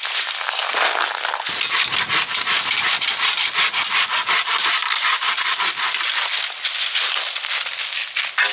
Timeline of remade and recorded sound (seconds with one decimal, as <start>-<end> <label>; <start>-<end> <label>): 0.0-4.8 recorded; 4.8-5.8 remade; 5.8-8.5 recorded